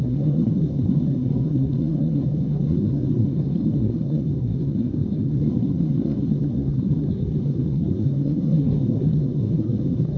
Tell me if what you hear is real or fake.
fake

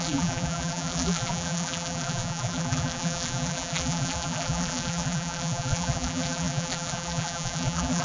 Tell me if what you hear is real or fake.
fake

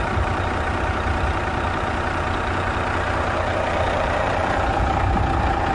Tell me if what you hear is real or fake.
fake